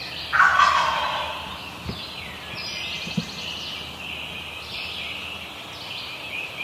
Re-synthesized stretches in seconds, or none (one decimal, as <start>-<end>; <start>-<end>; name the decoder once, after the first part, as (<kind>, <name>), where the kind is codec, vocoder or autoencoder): none